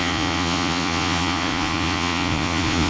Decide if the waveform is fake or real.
fake